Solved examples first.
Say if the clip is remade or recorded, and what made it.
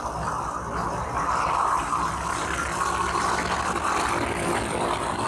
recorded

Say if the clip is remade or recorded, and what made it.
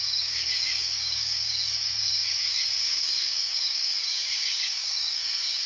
remade, codec, DAC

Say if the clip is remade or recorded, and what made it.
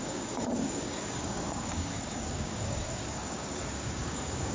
remade, codec, DAC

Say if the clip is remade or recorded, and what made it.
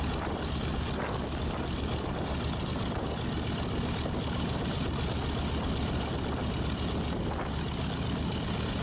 recorded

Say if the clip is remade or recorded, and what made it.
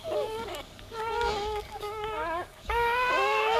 remade, codec, DAC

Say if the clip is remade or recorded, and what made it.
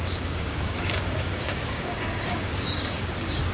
remade, codec, DAC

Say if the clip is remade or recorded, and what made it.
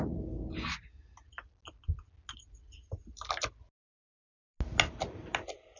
recorded